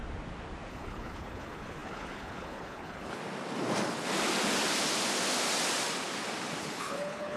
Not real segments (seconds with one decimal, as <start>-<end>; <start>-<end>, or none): 0.7-3.2; 6.6-7.4